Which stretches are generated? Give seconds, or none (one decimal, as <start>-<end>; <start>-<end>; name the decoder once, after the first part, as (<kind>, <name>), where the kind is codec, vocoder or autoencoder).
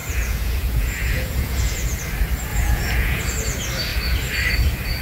0.0-2.0 (vocoder, Vocos); 2.5-3.2